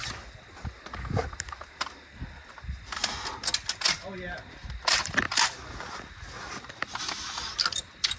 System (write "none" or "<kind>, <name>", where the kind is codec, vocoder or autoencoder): none